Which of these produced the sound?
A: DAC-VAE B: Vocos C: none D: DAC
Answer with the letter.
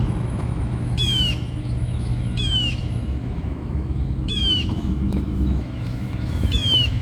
A